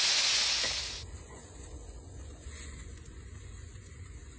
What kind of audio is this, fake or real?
fake